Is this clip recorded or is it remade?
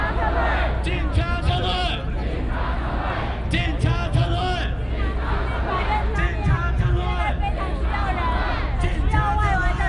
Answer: recorded